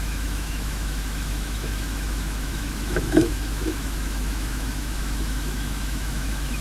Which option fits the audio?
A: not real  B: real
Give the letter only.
A